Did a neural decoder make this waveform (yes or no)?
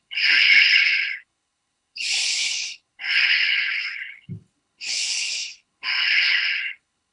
yes